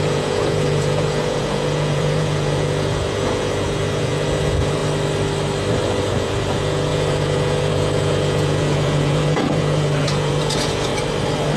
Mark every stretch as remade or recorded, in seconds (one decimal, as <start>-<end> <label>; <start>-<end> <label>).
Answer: 0.0-4.8 remade; 4.8-5.7 recorded; 5.7-10.9 remade; 10.9-11.6 recorded